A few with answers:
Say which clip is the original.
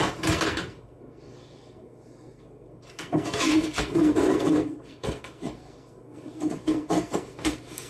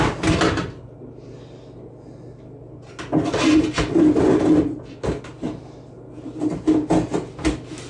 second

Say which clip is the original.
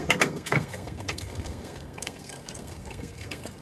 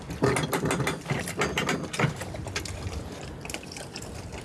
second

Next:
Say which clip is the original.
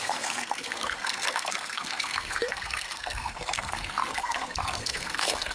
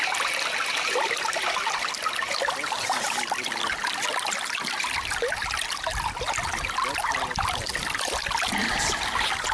second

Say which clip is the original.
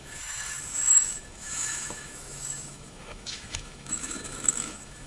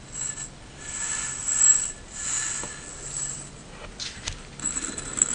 second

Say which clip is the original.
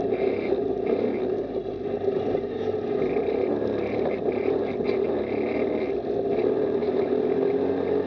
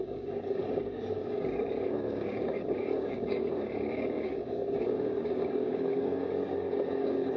first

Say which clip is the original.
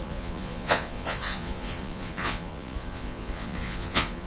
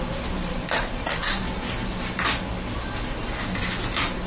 second